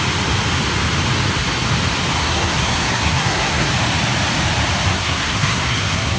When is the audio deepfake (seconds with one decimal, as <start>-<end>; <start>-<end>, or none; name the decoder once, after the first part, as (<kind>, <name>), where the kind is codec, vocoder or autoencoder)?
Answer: 2.2-3.7 (codec, SNAC); 4.9-6.2